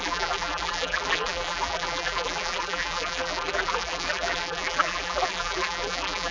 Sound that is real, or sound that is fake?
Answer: fake